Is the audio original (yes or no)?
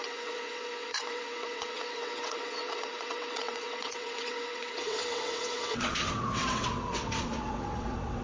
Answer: no